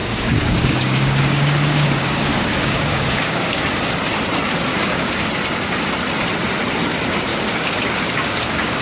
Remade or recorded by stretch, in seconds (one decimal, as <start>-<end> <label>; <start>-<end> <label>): 0.0-3.6 remade; 3.6-4.7 recorded; 4.7-5.2 remade; 5.2-7.3 recorded; 7.3-8.8 remade